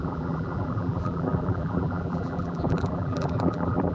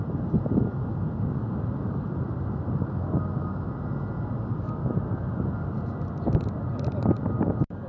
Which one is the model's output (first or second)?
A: first